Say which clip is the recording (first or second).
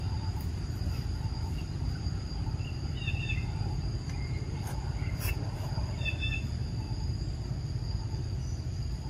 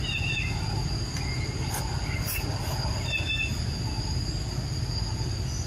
second